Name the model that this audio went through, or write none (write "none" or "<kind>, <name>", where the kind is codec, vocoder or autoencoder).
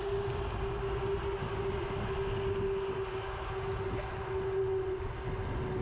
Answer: none